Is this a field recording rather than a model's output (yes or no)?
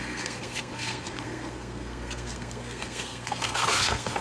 no